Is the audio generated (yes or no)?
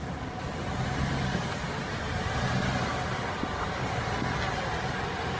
no